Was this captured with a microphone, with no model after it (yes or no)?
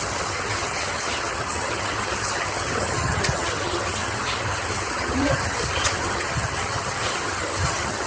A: no